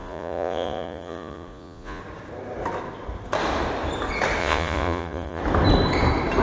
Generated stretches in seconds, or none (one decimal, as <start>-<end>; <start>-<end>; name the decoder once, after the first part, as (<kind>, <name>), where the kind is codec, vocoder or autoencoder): 0.0-2.0 (vocoder, Vocos); 4.4-5.4